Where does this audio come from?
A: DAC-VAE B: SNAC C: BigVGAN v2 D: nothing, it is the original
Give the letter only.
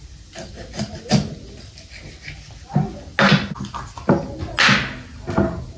D